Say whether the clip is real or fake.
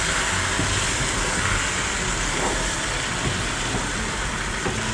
real